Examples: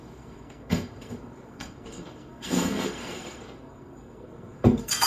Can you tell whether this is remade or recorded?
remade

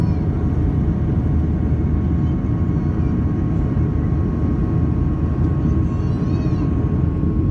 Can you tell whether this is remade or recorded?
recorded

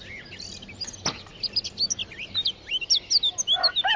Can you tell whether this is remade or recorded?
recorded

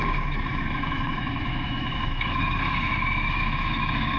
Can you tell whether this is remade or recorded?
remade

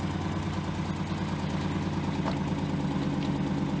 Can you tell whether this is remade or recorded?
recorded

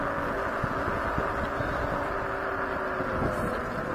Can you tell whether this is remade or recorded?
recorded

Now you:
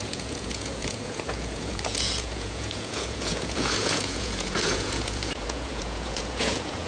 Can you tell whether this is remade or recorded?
remade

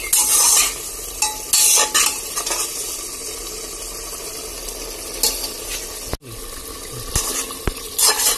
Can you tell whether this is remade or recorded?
recorded